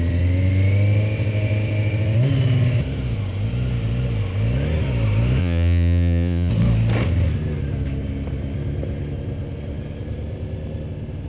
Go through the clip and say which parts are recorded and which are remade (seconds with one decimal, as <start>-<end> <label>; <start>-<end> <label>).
0.0-5.4 recorded; 5.4-6.5 remade; 6.5-11.3 recorded